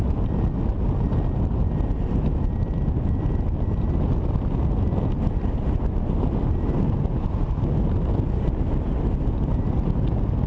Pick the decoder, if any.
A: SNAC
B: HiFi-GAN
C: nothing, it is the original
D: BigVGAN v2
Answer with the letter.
C